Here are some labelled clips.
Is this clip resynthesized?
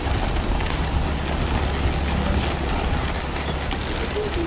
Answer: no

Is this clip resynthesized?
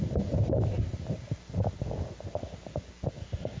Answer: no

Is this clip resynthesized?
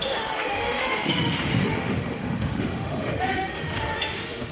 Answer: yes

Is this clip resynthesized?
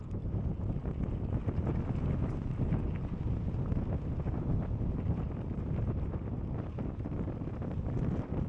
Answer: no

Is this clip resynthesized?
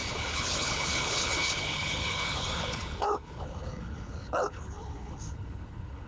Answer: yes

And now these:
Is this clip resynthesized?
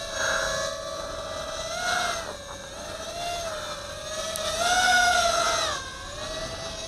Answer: no